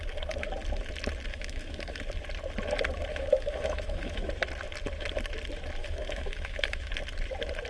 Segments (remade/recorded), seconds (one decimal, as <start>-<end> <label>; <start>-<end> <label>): 0.0-1.3 recorded; 1.3-2.0 remade; 2.0-3.1 recorded; 3.1-4.3 remade; 4.3-5.8 recorded; 5.8-6.9 remade; 6.9-7.7 recorded